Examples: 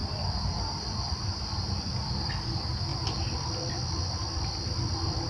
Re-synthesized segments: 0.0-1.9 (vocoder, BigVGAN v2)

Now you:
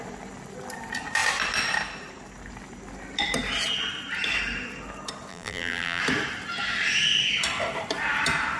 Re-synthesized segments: 5.3-6.0 (vocoder, BigVGAN v2)

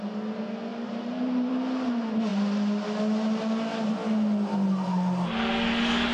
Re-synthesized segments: 0.7-1.5 (vocoder, BigVGAN v2)

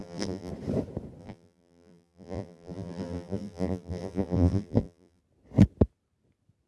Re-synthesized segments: 0.0-0.5 (vocoder, BigVGAN v2); 1.2-5.2

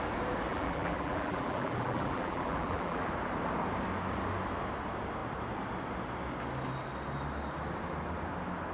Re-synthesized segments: 0.5-3.1 (vocoder, BigVGAN v2)

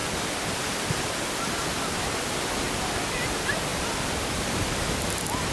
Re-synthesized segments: none

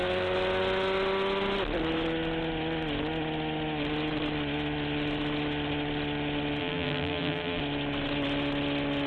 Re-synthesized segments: 6.6-7.6 (vocoder, BigVGAN v2)